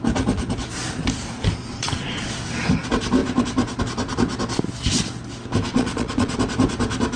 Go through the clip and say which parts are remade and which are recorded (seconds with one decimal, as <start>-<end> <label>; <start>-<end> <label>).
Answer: 0.0-1.7 recorded; 1.7-2.3 remade; 2.3-5.7 recorded; 5.7-6.4 remade; 6.4-7.2 recorded